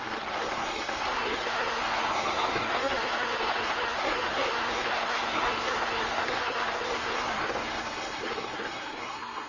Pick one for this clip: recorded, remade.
remade